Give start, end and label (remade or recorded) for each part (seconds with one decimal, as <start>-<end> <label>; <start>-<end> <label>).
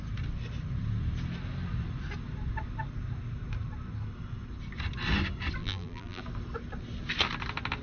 0.0-5.6 recorded; 5.6-6.2 remade; 6.2-7.8 recorded